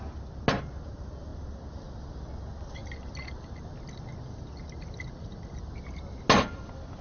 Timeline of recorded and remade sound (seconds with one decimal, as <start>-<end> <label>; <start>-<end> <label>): 0.0-7.0 recorded